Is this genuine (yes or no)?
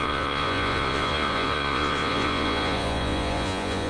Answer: no